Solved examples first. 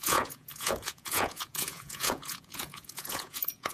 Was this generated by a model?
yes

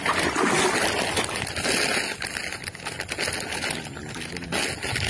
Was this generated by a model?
no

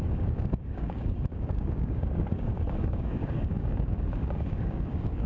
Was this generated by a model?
yes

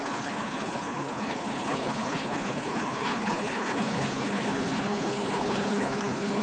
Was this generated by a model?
yes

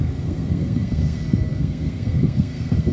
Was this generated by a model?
yes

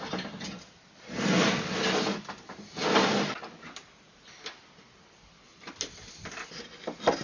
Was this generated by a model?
no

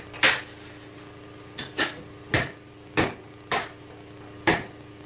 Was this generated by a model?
no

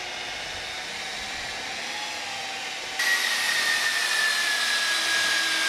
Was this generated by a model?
no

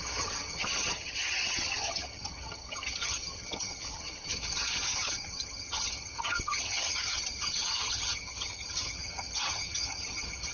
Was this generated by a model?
yes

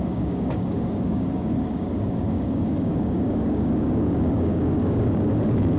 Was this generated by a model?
yes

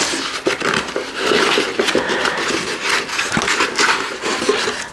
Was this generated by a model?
no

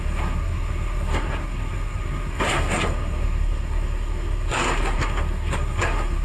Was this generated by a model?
yes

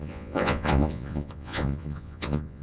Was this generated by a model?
yes